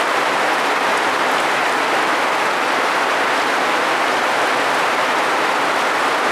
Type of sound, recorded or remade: recorded